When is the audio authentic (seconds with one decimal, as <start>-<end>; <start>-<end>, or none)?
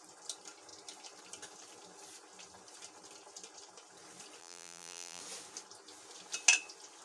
0.0-4.4; 5.2-7.0